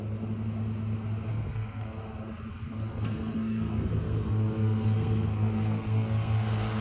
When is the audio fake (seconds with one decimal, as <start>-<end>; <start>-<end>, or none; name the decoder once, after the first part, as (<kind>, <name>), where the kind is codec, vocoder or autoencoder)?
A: 1.3-2.0 (codec, SNAC); 2.5-6.8